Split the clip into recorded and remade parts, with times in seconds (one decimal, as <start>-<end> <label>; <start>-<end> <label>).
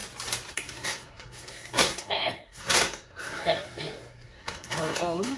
0.0-0.5 recorded; 0.5-5.4 remade